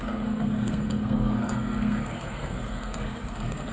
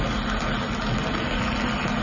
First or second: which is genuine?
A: second